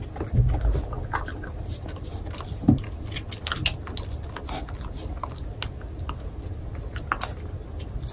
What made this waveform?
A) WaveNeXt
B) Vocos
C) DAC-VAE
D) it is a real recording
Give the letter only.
D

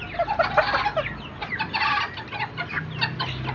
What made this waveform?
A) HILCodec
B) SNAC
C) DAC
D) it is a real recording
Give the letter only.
D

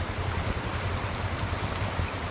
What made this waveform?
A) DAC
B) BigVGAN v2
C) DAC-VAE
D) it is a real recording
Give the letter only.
D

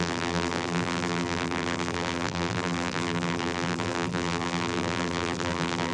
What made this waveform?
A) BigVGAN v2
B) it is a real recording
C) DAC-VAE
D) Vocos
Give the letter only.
A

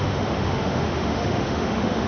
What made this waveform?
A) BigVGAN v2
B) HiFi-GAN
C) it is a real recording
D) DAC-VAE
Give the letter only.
D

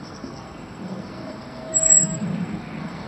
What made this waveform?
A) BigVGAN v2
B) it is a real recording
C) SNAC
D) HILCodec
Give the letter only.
C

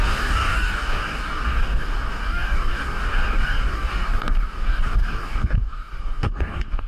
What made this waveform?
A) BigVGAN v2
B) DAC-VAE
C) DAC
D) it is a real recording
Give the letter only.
C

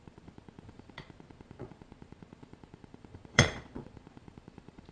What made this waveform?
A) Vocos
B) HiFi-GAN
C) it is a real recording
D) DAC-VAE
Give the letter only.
A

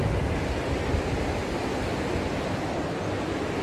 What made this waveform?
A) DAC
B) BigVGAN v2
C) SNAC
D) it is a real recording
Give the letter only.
D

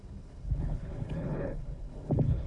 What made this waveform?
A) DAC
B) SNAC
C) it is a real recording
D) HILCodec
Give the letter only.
D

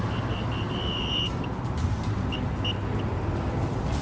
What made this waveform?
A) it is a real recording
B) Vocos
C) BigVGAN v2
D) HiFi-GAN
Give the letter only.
A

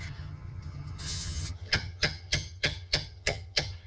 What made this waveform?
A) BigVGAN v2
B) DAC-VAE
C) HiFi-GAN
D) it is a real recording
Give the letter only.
C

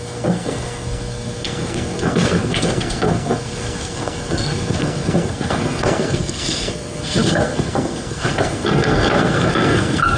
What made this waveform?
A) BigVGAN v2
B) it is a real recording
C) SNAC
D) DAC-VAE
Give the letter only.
C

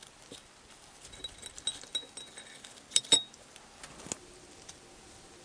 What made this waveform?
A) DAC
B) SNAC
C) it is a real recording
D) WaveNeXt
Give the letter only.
C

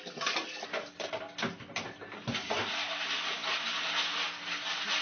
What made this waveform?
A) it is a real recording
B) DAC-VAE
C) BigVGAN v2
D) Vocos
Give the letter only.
A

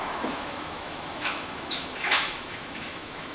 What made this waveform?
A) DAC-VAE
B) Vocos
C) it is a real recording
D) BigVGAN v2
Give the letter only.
A